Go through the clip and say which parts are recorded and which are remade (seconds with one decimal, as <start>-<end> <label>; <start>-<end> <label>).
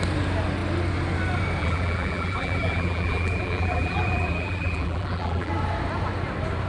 0.0-1.6 recorded; 1.6-5.5 remade; 5.5-6.7 recorded